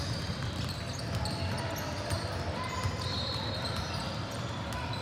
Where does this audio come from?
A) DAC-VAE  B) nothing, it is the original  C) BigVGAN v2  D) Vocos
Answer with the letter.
B